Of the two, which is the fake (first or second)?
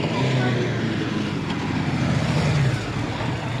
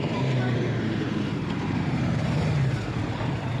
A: second